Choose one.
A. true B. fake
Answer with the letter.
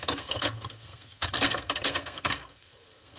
B